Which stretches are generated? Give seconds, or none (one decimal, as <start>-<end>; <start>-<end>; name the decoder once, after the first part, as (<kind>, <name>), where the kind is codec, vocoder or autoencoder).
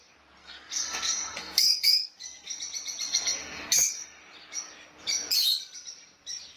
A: 0.4-2.6 (codec, SNAC); 3.1-4.2